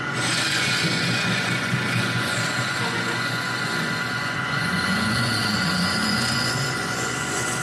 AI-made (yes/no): yes